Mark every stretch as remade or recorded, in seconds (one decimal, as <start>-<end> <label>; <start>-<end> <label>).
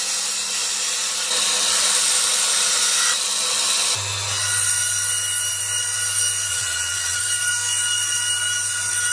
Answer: 0.0-6.5 recorded; 6.5-7.2 remade; 7.2-9.1 recorded